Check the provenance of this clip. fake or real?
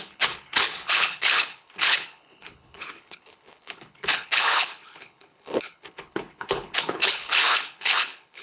fake